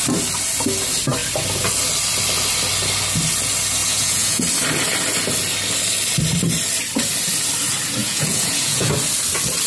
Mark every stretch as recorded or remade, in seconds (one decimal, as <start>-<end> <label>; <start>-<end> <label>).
0.0-3.8 recorded; 3.8-4.4 remade; 4.4-8.0 recorded; 8.0-8.9 remade; 8.9-9.7 recorded